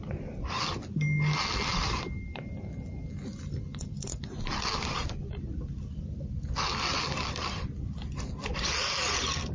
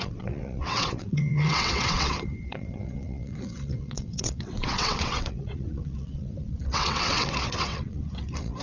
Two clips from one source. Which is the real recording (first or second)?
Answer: first